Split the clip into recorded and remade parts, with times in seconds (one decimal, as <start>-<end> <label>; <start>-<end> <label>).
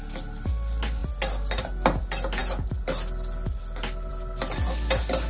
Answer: 0.0-5.3 recorded